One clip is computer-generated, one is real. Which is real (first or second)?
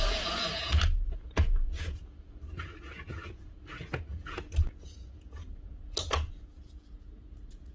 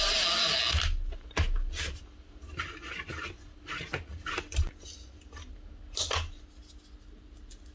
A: second